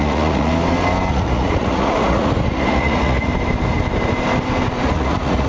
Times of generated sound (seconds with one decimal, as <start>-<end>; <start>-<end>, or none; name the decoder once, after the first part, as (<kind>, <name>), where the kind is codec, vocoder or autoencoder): 0.0-0.5 (vocoder, Vocos); 1.1-3.3; 4.8-5.5